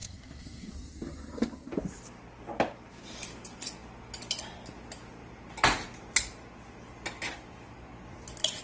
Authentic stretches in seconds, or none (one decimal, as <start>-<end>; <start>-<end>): 0.7-8.6